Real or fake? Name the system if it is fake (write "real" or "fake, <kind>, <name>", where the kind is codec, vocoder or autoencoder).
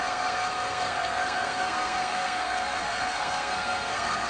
fake, codec, SNAC